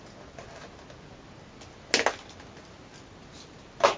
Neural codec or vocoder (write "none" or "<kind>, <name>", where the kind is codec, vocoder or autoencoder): none